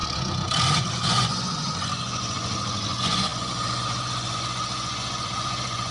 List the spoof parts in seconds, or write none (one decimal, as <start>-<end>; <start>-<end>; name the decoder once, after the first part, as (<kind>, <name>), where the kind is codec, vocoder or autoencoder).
0.0-5.9 (vocoder, Vocos)